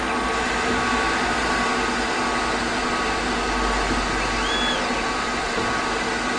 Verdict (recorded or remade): recorded